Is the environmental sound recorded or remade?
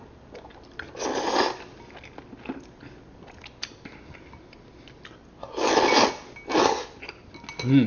recorded